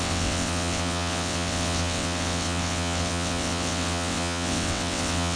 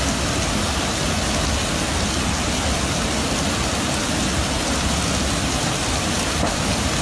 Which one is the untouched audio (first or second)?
second